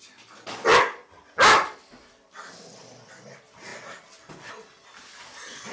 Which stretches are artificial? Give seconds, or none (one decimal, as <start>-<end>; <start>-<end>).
none